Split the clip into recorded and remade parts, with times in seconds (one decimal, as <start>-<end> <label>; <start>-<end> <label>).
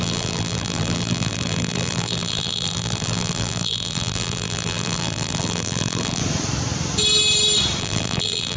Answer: 0.0-6.2 remade; 6.2-7.8 recorded; 7.8-8.6 remade